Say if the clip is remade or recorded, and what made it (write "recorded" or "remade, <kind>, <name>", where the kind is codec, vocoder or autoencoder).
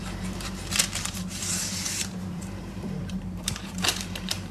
remade, vocoder, BigVGAN v2